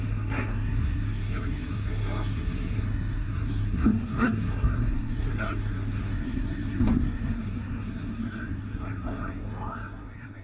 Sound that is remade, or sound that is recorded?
remade